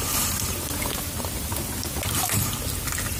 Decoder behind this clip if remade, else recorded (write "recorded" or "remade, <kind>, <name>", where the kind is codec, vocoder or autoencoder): recorded